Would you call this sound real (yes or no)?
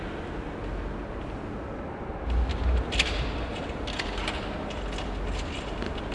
yes